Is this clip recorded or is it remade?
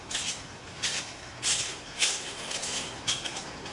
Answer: remade